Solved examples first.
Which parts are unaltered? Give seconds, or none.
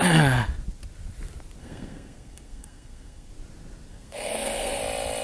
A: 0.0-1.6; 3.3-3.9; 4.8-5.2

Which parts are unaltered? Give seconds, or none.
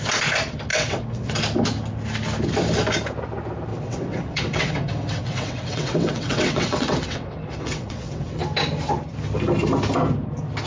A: 0.0-0.7; 1.3-3.7; 8.4-10.7